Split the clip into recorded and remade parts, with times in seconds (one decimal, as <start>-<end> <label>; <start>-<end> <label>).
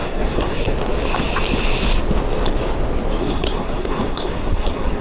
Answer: 0.0-0.7 remade; 0.7-3.2 recorded; 3.2-5.0 remade